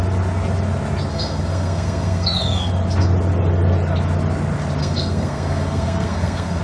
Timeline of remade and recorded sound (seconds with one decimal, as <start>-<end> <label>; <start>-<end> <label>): 0.0-1.1 recorded; 1.1-2.7 remade; 2.7-4.8 recorded; 4.8-6.6 remade